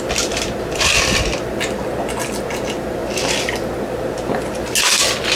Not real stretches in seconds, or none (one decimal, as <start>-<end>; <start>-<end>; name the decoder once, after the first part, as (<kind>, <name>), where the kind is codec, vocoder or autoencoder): none